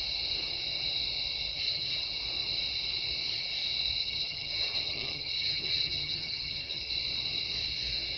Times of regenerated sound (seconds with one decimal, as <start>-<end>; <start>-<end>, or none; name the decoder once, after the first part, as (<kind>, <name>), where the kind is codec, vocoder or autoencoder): 1.5-2.1 (vocoder, HiFi-GAN); 4.0-6.9